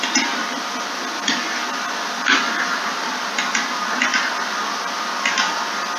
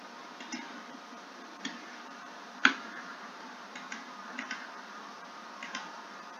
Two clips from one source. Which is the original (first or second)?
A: first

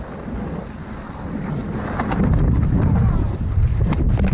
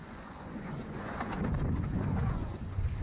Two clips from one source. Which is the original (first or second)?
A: first